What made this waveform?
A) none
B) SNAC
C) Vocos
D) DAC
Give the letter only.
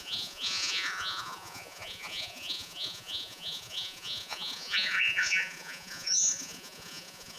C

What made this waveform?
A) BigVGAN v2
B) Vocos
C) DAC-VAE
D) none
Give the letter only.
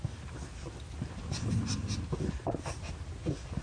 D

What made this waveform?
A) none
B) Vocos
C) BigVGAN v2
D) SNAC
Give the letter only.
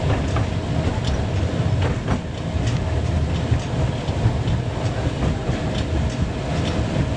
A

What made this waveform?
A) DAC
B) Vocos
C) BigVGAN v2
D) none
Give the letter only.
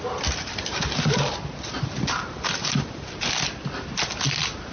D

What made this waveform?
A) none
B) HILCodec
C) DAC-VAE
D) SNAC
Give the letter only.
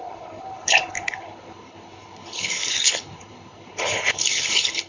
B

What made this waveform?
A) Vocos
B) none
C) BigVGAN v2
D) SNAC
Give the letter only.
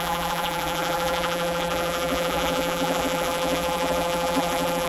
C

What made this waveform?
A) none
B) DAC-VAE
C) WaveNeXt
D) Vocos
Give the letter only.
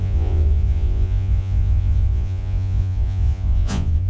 D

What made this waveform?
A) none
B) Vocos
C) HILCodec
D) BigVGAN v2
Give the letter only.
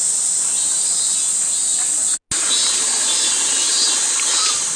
A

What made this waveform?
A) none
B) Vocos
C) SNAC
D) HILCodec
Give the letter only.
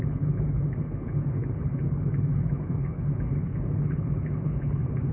D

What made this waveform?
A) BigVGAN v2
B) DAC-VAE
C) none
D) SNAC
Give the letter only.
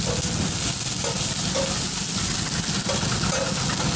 C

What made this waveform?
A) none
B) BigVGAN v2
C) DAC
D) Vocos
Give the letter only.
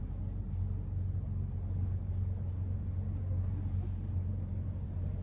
A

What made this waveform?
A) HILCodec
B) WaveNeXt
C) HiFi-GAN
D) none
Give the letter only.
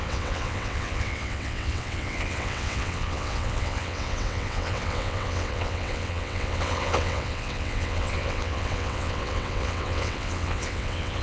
B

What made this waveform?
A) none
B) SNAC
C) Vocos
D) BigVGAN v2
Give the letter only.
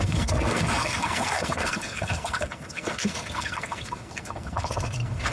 B